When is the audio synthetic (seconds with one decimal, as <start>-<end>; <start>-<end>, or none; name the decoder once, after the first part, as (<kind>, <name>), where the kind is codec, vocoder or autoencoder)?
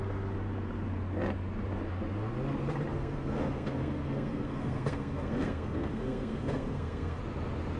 2.9-7.2 (codec, SNAC)